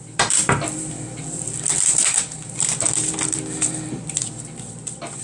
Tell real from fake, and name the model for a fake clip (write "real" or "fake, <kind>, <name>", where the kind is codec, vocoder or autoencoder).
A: fake, vocoder, BigVGAN v2